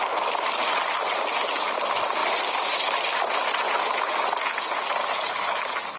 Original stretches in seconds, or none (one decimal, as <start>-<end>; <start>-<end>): 0.0-6.0